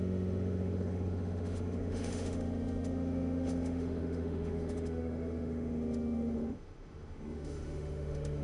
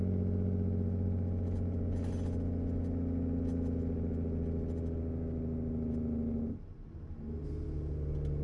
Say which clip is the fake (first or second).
first